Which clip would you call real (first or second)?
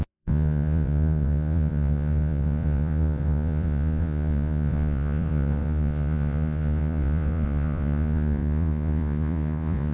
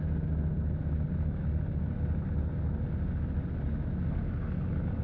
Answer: second